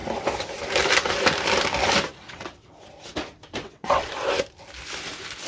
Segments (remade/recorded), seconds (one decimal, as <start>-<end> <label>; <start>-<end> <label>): 0.0-2.1 recorded; 2.1-2.7 remade; 2.7-3.6 recorded; 3.6-4.1 remade; 4.1-5.5 recorded